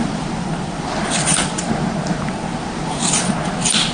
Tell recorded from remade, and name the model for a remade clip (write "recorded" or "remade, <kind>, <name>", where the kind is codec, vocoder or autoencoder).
remade, vocoder, BigVGAN v2